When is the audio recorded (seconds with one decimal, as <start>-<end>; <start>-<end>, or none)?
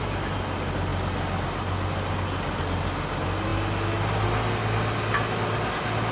0.0-6.1